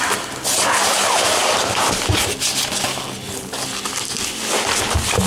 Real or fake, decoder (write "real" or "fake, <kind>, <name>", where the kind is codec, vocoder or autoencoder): real